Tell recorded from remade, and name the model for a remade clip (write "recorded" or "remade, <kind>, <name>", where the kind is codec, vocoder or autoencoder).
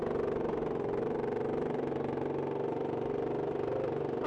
recorded